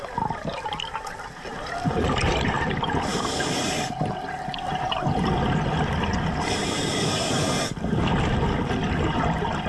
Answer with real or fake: real